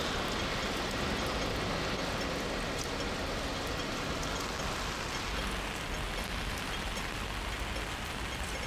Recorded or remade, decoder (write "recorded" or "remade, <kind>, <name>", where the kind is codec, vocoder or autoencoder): recorded